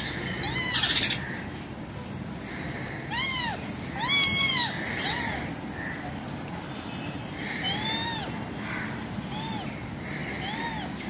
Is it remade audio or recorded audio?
recorded